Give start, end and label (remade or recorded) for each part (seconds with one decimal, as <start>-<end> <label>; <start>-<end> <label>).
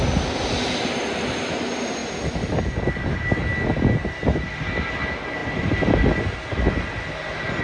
0.0-7.6 recorded